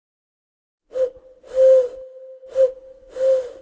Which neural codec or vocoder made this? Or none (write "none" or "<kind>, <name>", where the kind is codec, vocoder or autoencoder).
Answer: none